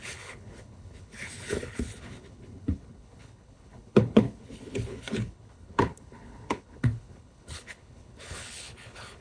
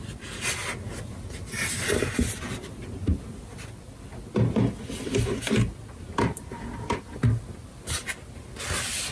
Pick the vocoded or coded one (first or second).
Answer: first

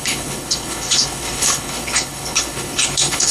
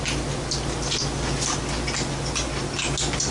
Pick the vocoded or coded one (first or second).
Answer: first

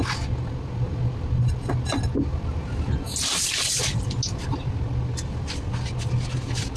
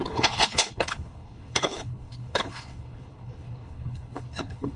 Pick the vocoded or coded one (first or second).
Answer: second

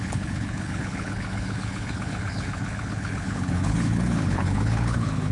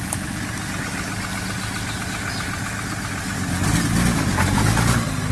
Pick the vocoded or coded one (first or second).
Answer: first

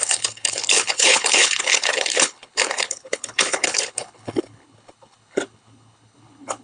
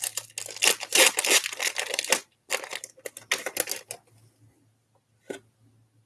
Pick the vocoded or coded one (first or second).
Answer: first